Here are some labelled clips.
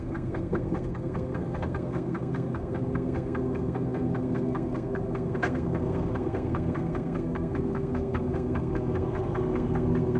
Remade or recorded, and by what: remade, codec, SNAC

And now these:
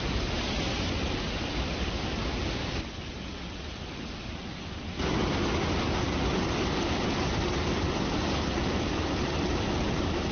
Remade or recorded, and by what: recorded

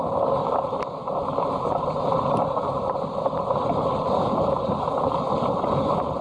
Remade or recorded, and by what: recorded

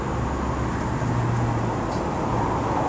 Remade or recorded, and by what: recorded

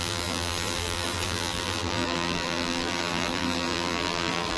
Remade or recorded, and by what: remade, vocoder, BigVGAN v2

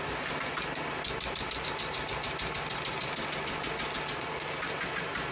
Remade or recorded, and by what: recorded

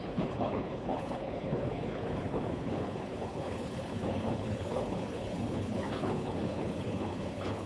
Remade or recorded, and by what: remade, codec, HILCodec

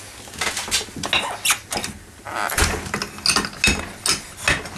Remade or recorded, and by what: recorded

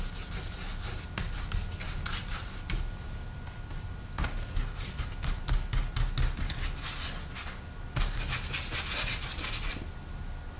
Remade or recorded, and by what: recorded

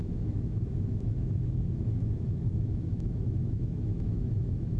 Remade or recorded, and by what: remade, autoencoder, DAC-VAE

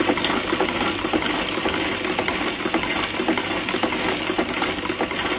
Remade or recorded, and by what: recorded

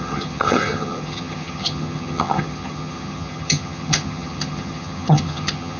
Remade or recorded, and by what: remade, vocoder, HiFi-GAN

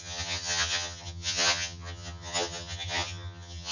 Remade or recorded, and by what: remade, vocoder, HiFi-GAN